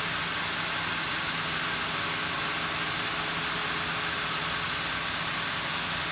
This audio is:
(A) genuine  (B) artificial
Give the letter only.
A